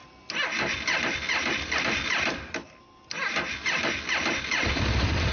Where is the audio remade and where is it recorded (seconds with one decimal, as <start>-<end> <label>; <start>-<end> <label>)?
0.0-5.3 recorded